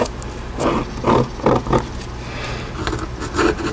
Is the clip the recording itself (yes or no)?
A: yes